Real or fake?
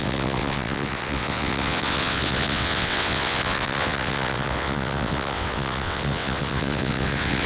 fake